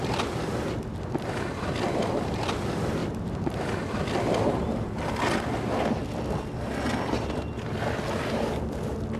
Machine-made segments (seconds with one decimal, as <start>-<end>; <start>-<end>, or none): 3.0-5.1; 6.0-7.0